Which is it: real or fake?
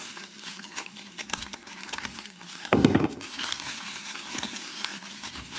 fake